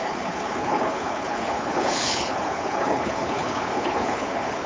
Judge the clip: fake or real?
fake